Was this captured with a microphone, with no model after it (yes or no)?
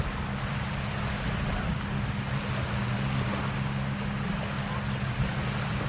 yes